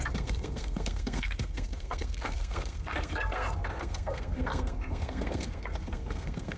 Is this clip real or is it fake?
fake